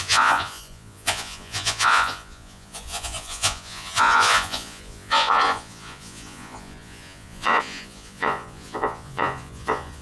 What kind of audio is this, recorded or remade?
remade